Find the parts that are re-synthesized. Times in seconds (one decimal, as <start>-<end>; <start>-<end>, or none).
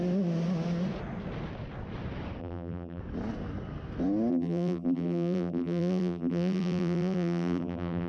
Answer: 2.4-3.0; 4.3-8.1